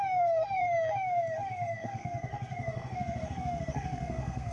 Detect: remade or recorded remade